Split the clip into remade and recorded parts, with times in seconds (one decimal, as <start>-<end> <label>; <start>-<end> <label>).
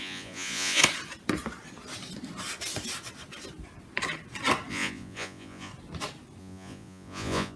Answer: 0.0-0.8 remade; 0.8-4.7 recorded; 4.7-5.7 remade; 5.7-6.4 recorded; 6.4-7.6 remade